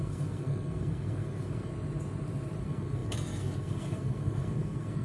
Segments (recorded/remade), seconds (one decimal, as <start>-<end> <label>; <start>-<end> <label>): 0.0-1.7 remade; 1.7-2.6 recorded; 2.6-5.0 remade